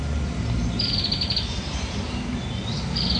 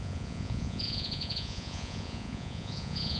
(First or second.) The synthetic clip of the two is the second